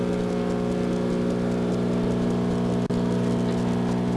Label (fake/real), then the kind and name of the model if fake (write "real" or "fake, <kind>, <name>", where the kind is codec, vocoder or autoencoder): real